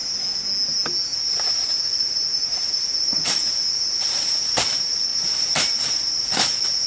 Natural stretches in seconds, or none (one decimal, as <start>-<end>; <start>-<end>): 0.0-1.2